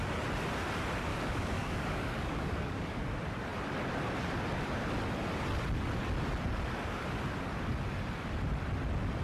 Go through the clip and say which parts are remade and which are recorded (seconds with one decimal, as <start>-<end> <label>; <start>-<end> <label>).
0.0-1.1 recorded; 1.1-3.0 remade; 3.0-9.2 recorded